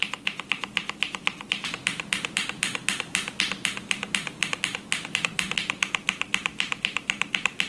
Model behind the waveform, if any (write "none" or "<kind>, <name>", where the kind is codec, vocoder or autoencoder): none